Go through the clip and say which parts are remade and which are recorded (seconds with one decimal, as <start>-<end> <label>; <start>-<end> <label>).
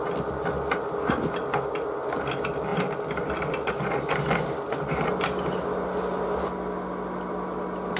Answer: 0.0-8.0 recorded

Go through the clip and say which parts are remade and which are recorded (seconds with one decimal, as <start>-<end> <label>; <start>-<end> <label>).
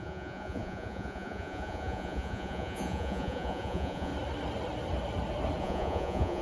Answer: 0.0-4.1 remade; 4.1-5.6 recorded; 5.6-6.4 remade